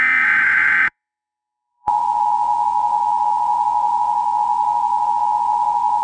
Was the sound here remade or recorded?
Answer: remade